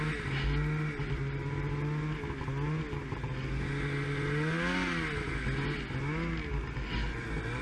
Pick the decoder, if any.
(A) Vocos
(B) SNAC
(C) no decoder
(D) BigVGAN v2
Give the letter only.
C